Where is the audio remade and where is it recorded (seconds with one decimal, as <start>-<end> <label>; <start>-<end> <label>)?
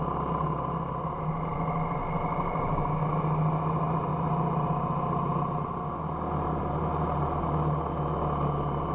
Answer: 0.0-2.0 recorded; 2.0-3.0 remade; 3.0-8.9 recorded